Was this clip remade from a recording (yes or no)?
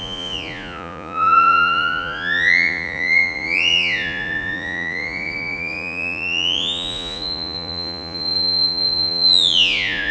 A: yes